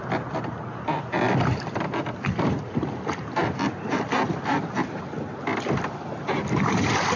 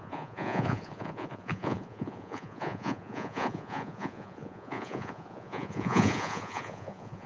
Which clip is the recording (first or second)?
first